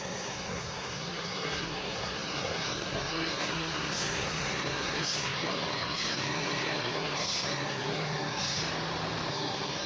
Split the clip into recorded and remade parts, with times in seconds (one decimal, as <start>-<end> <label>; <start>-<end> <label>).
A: 0.0-8.6 remade; 8.6-9.3 recorded; 9.3-9.9 remade